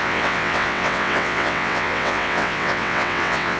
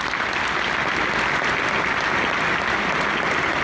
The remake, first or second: first